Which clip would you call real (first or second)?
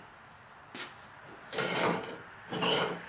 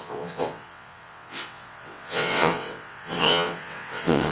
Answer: first